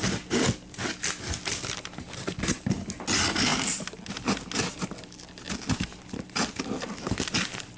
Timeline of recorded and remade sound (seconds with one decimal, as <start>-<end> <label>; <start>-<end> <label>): 0.0-7.8 recorded